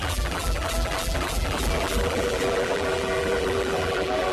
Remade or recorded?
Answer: remade